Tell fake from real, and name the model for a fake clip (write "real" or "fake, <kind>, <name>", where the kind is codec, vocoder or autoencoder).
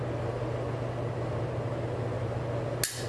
real